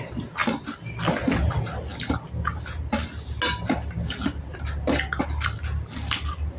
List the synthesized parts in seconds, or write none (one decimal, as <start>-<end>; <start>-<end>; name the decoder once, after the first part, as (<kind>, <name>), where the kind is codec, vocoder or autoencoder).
none